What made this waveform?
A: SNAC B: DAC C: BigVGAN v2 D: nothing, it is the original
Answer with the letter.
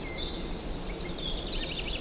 D